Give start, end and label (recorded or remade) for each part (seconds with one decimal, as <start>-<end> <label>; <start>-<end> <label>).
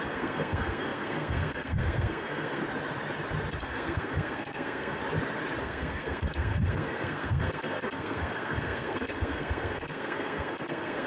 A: 0.0-2.6 remade; 2.6-3.6 recorded; 3.6-5.0 remade; 5.0-5.6 recorded; 5.6-11.1 remade